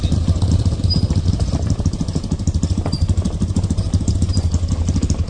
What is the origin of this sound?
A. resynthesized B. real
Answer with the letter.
B